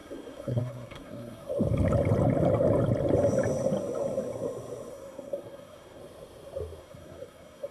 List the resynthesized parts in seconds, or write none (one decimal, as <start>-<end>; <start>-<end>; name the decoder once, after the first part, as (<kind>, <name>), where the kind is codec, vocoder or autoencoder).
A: 0.0-1.5 (codec, SNAC); 4.9-6.0; 6.8-7.7